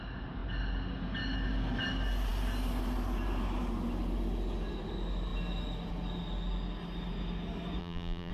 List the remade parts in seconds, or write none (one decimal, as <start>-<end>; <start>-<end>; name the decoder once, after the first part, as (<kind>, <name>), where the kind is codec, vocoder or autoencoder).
7.8-8.3 (vocoder, BigVGAN v2)